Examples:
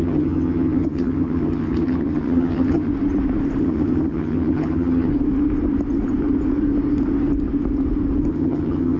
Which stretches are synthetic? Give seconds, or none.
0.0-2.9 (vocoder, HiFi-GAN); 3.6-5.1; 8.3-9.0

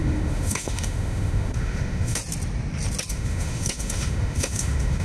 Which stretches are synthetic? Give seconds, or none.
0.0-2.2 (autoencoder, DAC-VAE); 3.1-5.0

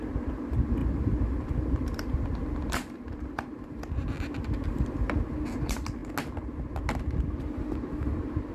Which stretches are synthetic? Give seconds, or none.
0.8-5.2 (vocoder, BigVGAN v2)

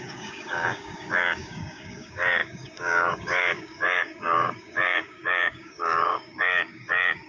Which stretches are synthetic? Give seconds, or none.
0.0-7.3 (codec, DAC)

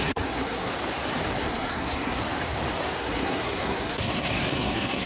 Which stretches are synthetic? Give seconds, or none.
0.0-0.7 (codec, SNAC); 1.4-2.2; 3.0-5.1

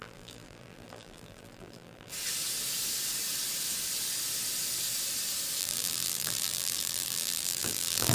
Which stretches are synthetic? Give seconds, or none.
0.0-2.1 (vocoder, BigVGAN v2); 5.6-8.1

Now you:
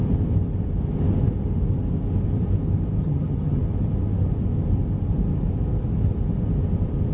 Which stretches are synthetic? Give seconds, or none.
3.0-3.6 (vocoder, HiFi-GAN)